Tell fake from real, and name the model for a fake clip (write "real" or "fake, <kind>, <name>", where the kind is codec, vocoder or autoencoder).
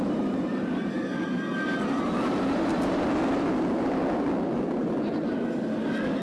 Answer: real